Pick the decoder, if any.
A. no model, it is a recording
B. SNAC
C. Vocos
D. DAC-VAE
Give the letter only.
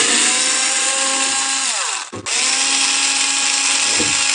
A